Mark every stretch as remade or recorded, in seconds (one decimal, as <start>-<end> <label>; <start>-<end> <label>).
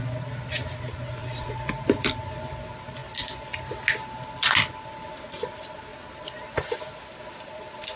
0.0-1.2 recorded; 1.2-2.1 remade; 2.1-8.0 recorded